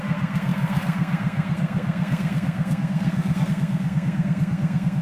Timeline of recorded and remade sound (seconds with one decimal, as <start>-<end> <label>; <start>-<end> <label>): 0.0-5.0 remade